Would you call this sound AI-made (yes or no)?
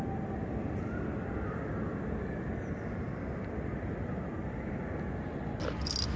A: no